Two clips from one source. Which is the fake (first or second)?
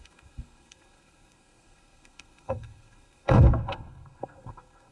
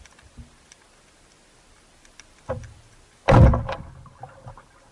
first